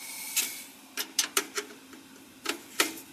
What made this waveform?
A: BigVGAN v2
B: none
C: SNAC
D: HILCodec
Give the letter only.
B